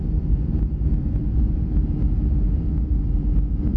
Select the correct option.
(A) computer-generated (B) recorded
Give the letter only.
A